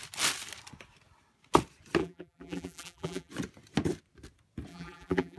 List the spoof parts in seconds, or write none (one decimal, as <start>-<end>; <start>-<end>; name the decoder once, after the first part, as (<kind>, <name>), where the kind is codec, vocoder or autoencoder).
2.0-3.3 (vocoder, BigVGAN v2); 4.7-5.4